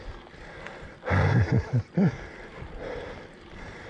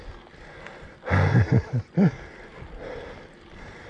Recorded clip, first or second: second